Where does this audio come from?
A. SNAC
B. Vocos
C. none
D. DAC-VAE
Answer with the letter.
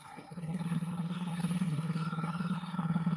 A